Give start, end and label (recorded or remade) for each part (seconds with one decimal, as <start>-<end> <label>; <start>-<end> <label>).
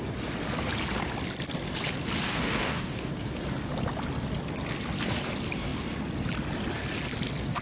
0.0-2.3 recorded; 2.3-3.1 remade; 3.1-7.6 recorded